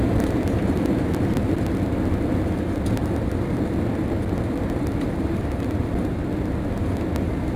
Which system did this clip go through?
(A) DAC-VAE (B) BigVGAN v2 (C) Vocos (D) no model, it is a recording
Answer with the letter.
D